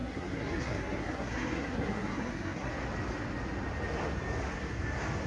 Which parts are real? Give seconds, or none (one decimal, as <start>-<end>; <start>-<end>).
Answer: 2.7-5.3